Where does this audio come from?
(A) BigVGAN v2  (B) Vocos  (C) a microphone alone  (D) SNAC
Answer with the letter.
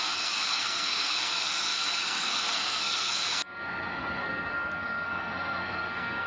D